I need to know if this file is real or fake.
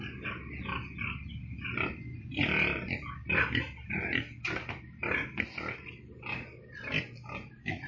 real